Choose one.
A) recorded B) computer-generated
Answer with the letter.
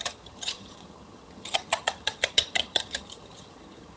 B